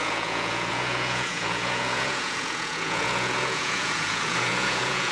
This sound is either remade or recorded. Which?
remade